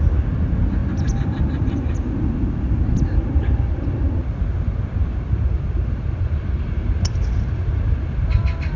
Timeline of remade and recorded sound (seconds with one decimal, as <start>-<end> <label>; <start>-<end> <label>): 0.0-8.8 recorded